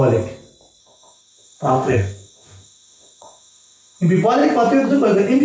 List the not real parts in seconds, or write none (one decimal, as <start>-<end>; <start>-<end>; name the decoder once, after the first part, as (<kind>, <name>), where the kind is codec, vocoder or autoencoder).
0.8-4.0 (autoencoder, DAC-VAE)